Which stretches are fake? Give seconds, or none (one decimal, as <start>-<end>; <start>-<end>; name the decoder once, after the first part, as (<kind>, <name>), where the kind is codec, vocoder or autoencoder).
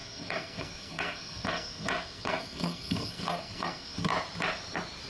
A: 0.0-4.1 (codec, SNAC)